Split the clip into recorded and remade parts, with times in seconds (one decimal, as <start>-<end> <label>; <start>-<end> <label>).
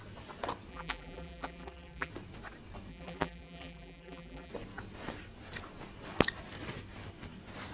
0.0-0.7 recorded; 0.7-2.1 remade; 2.1-2.9 recorded; 2.9-4.5 remade; 4.5-7.7 recorded